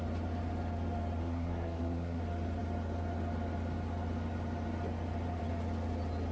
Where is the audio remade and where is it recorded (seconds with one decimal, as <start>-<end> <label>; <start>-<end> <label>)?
0.0-1.2 recorded; 1.2-2.2 remade; 2.2-6.3 recorded